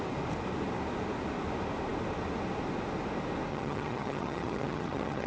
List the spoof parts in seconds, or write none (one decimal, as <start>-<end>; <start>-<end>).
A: 3.5-5.3